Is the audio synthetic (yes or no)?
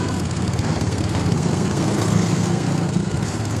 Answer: yes